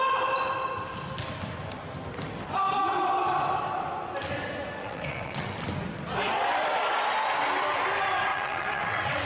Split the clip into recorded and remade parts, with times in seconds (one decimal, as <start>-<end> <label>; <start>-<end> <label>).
0.0-4.8 recorded; 4.8-5.5 remade; 5.5-8.3 recorded; 8.3-9.3 remade